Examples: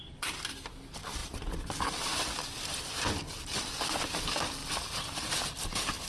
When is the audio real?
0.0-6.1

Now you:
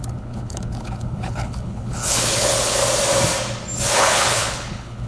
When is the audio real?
2.8-4.0

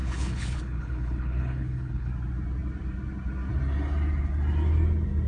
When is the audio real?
2.1-5.3

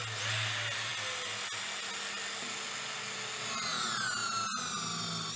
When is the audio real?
0.0-5.4